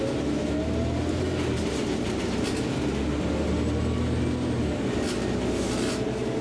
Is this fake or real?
real